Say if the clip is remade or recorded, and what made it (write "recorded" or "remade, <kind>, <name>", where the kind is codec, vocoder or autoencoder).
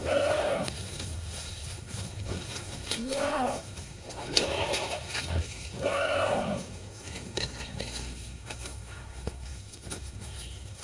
remade, codec, SNAC